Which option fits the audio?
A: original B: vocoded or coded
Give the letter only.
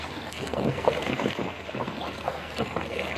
B